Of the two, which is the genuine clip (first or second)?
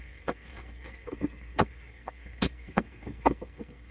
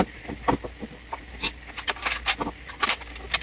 second